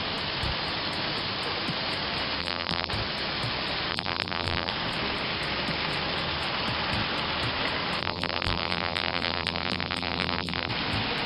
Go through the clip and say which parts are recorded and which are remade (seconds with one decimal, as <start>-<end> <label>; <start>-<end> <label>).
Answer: 0.0-2.4 recorded; 2.4-2.9 remade; 2.9-3.9 recorded; 3.9-4.7 remade; 4.7-8.0 recorded; 8.0-10.7 remade; 10.7-11.3 recorded